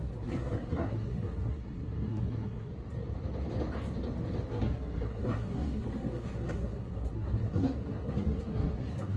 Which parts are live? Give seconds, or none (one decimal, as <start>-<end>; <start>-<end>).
2.7-4.5